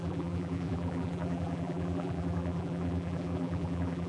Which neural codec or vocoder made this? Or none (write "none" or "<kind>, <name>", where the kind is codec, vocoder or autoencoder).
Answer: vocoder, BigVGAN v2